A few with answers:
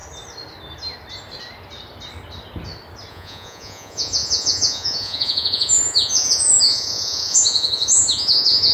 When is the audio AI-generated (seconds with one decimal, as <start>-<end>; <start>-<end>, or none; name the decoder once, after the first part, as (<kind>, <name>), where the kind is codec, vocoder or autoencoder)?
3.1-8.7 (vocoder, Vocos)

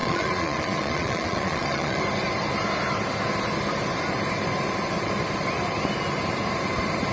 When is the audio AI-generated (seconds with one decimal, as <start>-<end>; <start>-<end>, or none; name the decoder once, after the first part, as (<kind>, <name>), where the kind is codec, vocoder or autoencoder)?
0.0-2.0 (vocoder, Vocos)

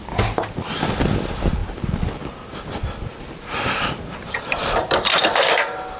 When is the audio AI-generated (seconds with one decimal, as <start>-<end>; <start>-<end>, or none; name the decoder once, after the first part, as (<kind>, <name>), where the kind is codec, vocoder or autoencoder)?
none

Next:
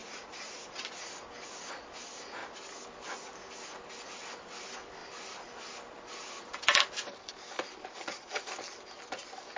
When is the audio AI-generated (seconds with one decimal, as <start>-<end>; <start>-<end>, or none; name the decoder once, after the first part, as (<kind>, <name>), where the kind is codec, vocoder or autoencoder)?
0.0-1.1 (vocoder, Vocos)

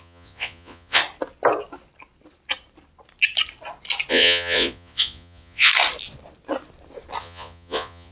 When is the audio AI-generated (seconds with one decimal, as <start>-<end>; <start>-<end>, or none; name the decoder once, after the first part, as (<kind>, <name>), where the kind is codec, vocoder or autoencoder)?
0.0-1.0 (vocoder, Vocos); 4.1-5.7; 7.2-8.1

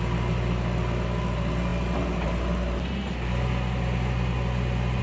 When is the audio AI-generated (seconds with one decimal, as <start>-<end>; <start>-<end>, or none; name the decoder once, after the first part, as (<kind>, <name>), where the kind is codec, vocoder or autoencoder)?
none

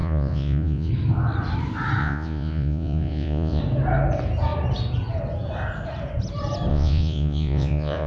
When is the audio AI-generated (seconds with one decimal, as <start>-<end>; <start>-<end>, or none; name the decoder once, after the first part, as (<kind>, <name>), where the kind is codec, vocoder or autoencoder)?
0.0-0.9 (vocoder, Vocos); 2.0-3.6; 6.7-8.1